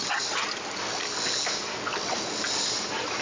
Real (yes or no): yes